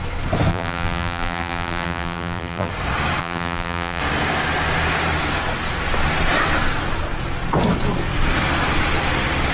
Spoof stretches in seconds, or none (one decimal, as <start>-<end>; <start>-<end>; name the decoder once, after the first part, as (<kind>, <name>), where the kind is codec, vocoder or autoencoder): 0.5-2.7 (vocoder, BigVGAN v2); 3.2-4.0